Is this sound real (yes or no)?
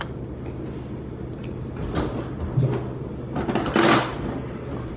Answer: yes